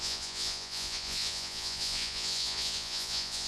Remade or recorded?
remade